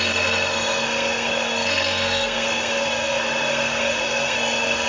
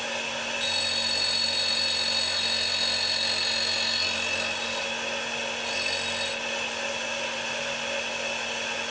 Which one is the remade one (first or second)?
first